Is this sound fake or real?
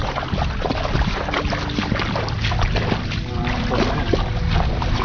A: real